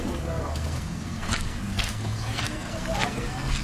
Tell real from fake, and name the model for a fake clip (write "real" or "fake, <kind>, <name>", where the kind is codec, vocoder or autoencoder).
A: fake, codec, SNAC